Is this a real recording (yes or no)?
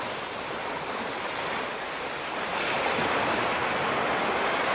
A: yes